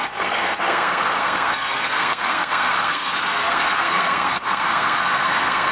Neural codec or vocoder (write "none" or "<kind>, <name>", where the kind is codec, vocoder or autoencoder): codec, SNAC